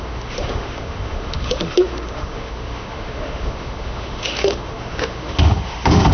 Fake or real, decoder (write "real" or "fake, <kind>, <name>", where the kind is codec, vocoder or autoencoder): fake, autoencoder, DAC-VAE